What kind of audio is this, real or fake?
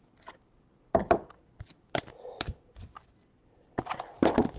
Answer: fake